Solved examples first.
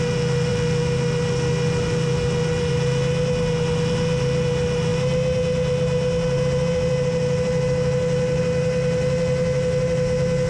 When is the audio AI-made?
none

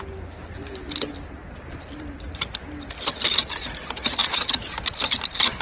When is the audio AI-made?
1.4-2.6 (vocoder, BigVGAN v2); 4.2-5.6